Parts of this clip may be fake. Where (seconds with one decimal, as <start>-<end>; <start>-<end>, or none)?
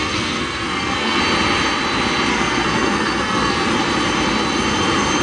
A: 0.0-1.2; 2.3-3.6